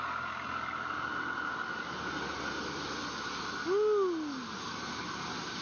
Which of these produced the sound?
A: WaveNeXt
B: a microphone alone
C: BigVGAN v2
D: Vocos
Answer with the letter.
B